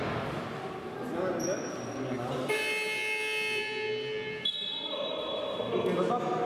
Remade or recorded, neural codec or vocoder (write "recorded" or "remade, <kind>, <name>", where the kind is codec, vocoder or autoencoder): recorded